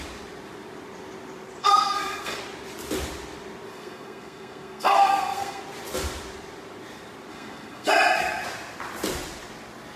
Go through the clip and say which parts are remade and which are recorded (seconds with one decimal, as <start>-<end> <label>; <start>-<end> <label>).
0.0-1.6 recorded; 1.6-2.4 remade; 2.4-3.7 recorded; 3.7-5.6 remade; 5.6-7.3 recorded; 7.3-7.9 remade; 7.9-10.0 recorded